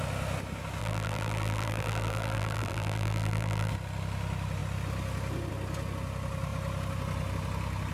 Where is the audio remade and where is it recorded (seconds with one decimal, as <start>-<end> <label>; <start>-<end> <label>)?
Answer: 0.0-0.8 recorded; 0.8-3.7 remade; 3.7-7.9 recorded